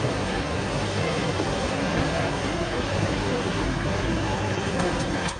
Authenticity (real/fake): fake